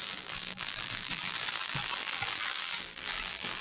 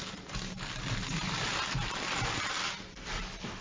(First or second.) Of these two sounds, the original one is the second